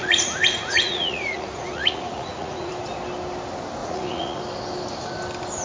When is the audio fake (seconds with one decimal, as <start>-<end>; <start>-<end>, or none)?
0.0-2.7; 3.8-4.4